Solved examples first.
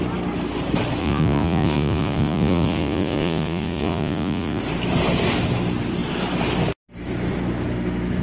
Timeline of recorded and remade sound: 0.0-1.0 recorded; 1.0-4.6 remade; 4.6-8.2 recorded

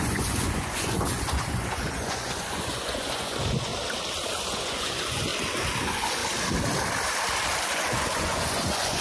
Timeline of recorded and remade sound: 0.0-3.7 remade; 3.7-4.4 recorded; 4.4-5.3 remade; 5.3-5.8 recorded; 5.8-6.2 remade; 6.2-7.7 recorded; 7.7-9.0 remade

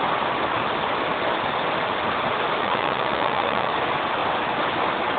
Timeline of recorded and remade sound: 0.0-2.6 recorded; 2.6-3.7 remade; 3.7-5.2 recorded